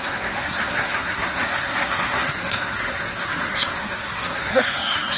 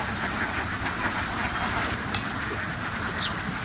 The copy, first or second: first